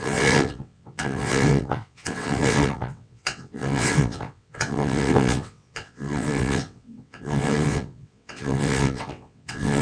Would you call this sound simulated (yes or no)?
yes